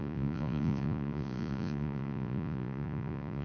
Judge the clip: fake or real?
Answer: fake